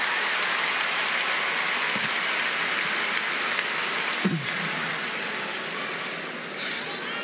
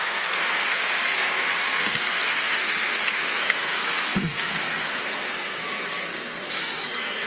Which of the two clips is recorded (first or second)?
first